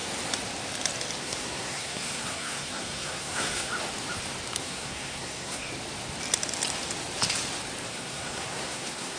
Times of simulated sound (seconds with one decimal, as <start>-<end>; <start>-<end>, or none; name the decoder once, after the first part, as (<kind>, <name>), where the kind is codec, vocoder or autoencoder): 1.2-3.7 (codec, SNAC); 4.6-5.7; 7.9-9.2